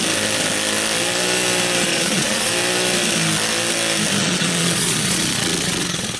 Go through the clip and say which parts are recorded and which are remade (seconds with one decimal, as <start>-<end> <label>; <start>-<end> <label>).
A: 0.0-1.9 recorded; 1.9-2.5 remade; 2.5-4.2 recorded; 4.2-6.2 remade

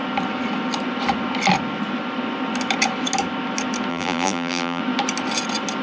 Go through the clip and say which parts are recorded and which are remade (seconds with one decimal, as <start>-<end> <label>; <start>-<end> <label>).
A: 0.0-3.9 recorded; 3.9-4.8 remade; 4.8-5.8 recorded